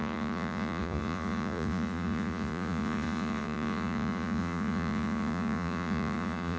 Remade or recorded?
remade